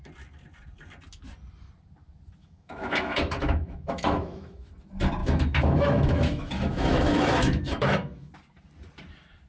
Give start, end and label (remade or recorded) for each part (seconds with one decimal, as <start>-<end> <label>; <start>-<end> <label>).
0.0-2.4 recorded; 2.4-4.7 remade; 4.7-5.2 recorded; 5.2-8.3 remade; 8.3-9.5 recorded